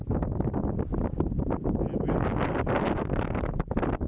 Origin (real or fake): real